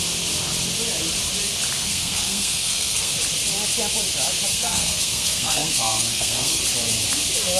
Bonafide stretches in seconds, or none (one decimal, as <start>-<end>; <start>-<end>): 0.0-1.8; 3.1-4.5; 6.6-7.6